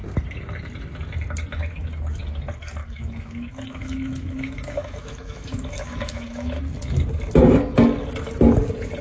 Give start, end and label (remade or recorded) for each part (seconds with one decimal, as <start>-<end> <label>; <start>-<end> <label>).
0.0-2.8 recorded; 2.8-6.6 remade; 6.6-9.0 recorded